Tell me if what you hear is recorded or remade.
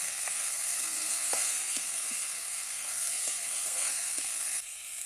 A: remade